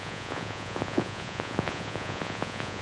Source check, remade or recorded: remade